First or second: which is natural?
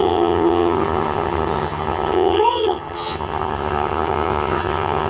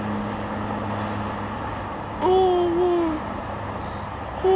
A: second